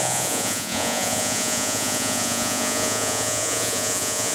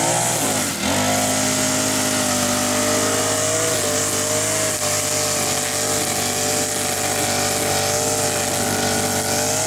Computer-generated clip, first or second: first